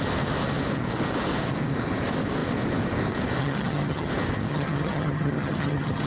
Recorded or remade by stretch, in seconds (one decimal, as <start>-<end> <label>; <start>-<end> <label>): 0.0-3.4 recorded; 3.4-4.1 remade; 4.1-4.5 recorded; 4.5-6.1 remade